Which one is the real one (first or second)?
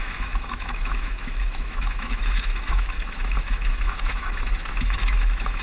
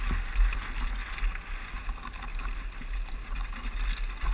second